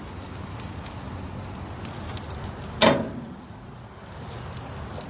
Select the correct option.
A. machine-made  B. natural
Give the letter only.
B